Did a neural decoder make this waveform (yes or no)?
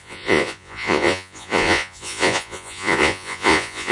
yes